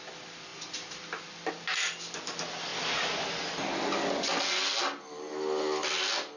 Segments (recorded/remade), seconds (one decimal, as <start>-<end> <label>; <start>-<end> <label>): 0.0-6.4 recorded